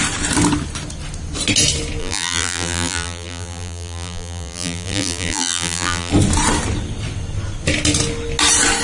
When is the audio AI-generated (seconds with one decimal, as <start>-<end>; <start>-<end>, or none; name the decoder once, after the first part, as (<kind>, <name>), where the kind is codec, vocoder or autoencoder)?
2.0-6.1 (vocoder, BigVGAN v2)